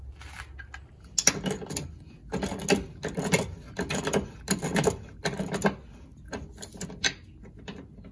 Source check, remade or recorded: recorded